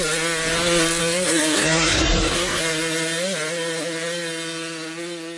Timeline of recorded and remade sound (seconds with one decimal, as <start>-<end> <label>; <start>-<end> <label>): 0.0-1.0 recorded; 1.0-2.6 remade; 2.6-5.4 recorded